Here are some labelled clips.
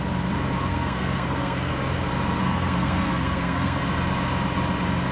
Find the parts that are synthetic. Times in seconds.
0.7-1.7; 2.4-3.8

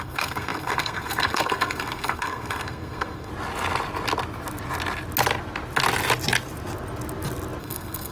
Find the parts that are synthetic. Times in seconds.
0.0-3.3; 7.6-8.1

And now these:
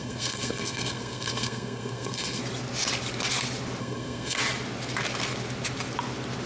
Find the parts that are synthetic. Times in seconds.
0.0-2.4; 3.8-4.4